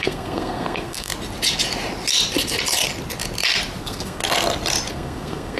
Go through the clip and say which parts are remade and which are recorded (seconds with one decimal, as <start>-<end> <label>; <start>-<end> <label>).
0.0-1.1 remade; 1.1-3.8 recorded; 3.8-4.2 remade; 4.2-4.9 recorded; 4.9-5.6 remade